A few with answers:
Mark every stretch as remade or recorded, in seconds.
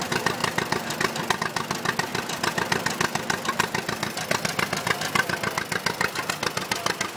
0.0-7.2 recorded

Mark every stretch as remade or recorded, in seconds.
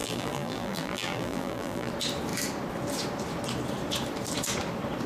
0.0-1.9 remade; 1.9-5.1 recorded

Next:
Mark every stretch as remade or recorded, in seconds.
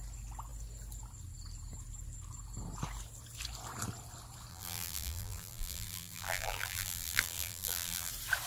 0.0-4.5 recorded; 4.5-8.1 remade; 8.1-8.5 recorded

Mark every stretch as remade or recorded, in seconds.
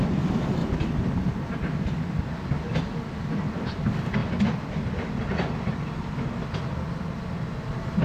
0.0-8.0 recorded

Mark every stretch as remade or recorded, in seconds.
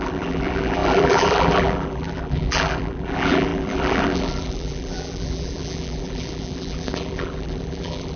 0.0-8.2 remade